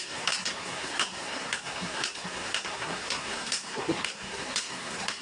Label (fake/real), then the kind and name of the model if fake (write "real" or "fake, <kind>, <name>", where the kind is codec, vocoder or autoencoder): fake, codec, SNAC